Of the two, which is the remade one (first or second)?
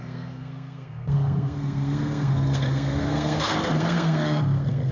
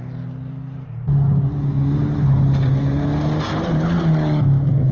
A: first